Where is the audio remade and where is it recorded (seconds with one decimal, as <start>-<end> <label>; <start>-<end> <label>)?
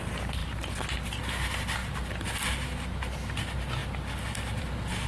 0.0-5.1 recorded